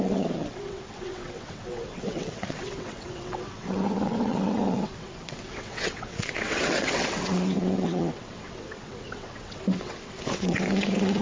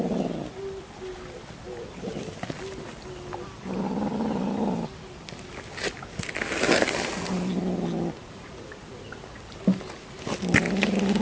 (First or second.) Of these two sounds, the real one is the second